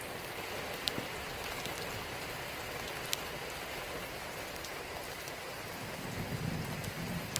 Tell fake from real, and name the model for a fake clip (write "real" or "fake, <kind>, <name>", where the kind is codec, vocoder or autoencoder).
real